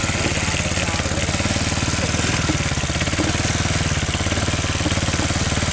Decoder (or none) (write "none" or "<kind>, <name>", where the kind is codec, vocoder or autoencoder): none